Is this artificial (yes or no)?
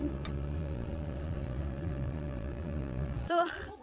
yes